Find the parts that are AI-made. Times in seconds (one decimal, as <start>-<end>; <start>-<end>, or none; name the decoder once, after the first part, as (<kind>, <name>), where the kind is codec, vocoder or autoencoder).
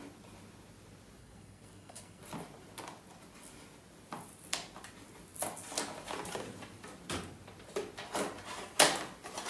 1.2-2.2 (codec, SNAC)